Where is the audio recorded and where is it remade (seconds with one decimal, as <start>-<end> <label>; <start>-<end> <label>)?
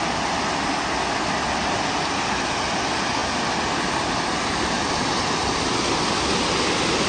0.0-7.1 recorded